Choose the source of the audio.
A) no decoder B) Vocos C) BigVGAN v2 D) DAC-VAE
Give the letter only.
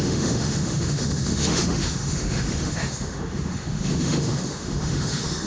D